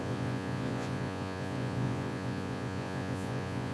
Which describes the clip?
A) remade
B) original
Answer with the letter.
A